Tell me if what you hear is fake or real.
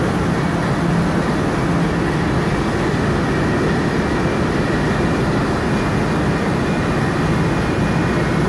real